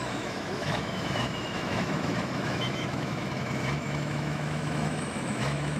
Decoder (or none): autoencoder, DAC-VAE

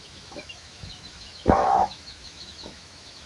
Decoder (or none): autoencoder, DAC-VAE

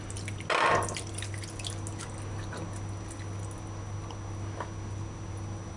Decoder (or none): none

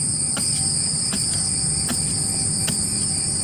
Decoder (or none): none